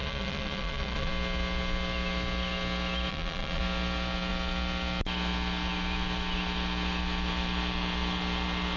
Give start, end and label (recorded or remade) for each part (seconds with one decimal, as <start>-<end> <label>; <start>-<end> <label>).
0.0-1.1 remade; 1.1-3.1 recorded; 3.1-3.6 remade; 3.6-8.8 recorded